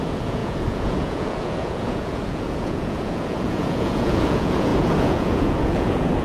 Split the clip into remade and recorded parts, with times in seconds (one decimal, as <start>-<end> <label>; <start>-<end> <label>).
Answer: 0.0-6.2 remade